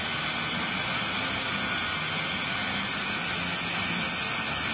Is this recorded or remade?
recorded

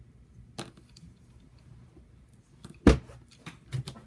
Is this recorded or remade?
recorded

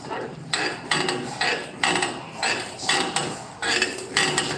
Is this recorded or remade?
recorded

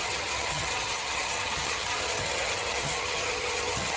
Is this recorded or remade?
remade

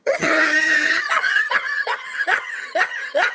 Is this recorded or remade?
remade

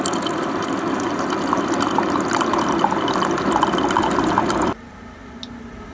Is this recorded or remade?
remade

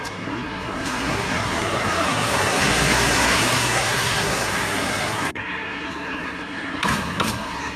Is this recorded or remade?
remade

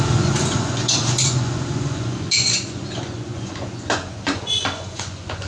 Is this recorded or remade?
remade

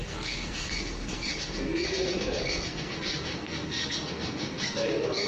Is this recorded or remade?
remade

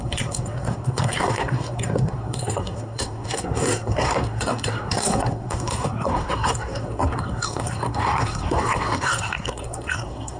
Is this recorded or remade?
remade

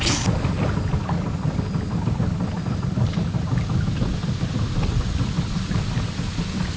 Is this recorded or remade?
recorded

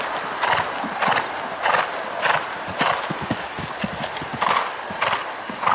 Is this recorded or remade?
recorded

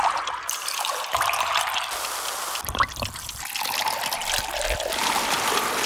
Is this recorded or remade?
recorded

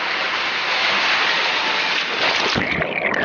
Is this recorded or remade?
recorded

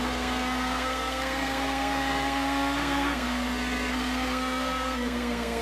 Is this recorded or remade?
remade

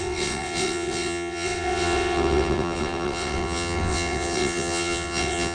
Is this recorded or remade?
remade